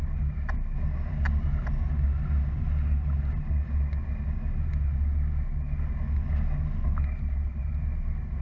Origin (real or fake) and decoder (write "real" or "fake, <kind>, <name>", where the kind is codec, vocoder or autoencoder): real